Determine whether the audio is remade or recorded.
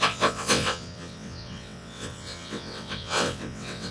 remade